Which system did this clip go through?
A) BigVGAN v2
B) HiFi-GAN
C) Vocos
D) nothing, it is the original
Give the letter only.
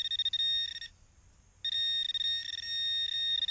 D